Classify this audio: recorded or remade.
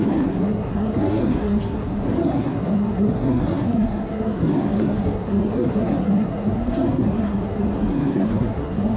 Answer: remade